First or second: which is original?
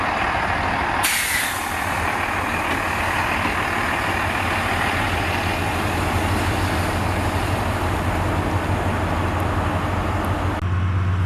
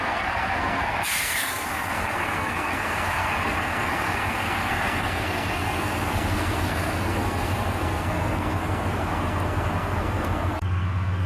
first